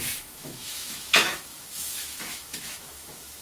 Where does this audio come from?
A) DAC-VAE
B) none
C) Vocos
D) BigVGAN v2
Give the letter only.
A